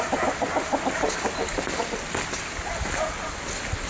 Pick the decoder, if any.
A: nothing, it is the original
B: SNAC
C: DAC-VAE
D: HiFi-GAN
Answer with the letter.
A